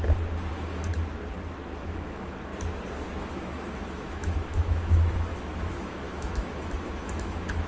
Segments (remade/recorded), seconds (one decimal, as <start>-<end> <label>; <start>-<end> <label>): 0.0-0.5 recorded; 0.5-0.9 remade; 0.9-1.8 recorded; 1.8-2.5 remade; 2.5-3.2 recorded; 3.2-7.7 remade